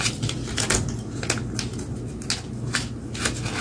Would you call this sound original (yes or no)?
yes